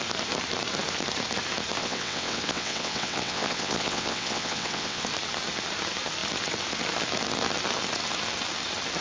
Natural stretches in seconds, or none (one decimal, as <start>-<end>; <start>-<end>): 0.0-1.8; 5.0-9.0